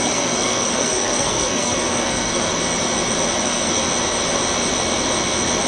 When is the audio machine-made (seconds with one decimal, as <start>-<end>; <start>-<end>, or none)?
0.0-2.5; 3.4-3.8